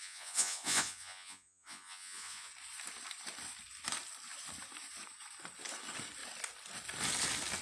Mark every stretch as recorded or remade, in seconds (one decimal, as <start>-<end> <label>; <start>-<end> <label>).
0.0-2.5 remade; 2.5-7.6 recorded